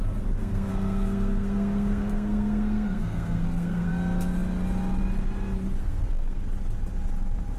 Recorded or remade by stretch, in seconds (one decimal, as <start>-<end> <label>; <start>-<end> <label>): 0.0-0.4 recorded; 0.4-3.9 remade; 3.9-5.8 recorded; 5.8-6.4 remade; 6.4-7.6 recorded